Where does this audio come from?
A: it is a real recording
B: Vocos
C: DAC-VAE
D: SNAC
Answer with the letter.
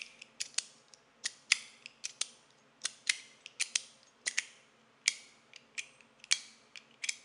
A